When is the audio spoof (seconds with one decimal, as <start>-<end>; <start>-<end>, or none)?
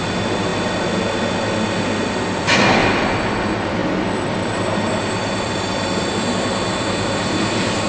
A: 0.0-0.5; 2.4-2.8; 3.4-7.9